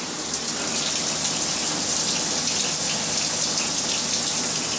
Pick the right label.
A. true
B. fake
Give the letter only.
A